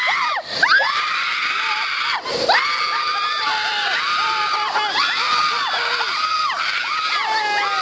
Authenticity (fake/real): real